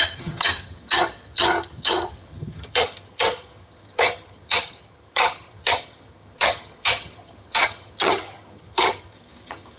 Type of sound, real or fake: fake